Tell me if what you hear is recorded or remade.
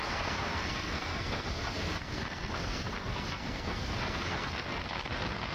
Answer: remade